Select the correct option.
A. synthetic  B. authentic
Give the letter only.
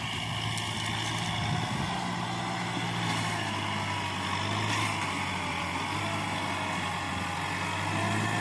B